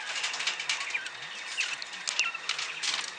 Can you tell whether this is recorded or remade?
recorded